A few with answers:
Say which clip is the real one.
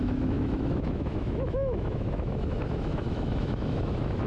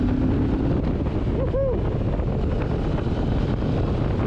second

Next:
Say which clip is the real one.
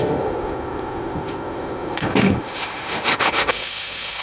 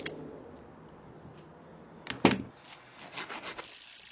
second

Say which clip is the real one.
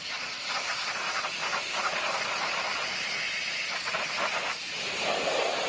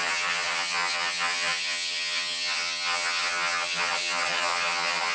first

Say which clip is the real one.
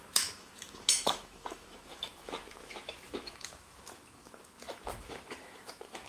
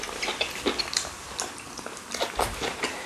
second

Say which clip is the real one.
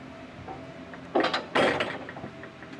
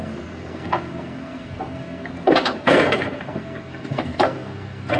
first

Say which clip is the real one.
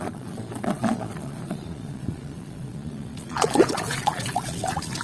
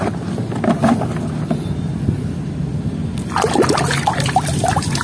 second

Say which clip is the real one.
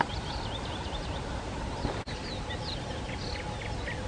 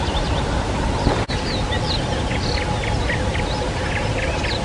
second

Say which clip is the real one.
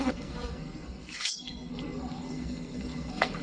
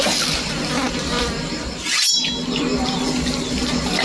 second